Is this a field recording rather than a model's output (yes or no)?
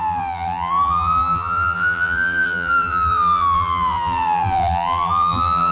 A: no